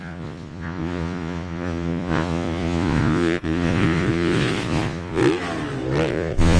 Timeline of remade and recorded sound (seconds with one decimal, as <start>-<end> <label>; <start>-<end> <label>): 0.0-5.2 remade; 5.2-6.1 recorded; 6.1-6.6 remade